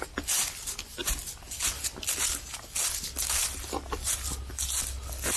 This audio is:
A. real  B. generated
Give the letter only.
A